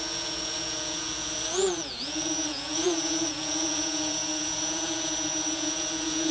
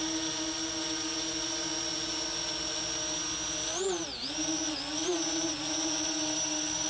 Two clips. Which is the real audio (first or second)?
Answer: second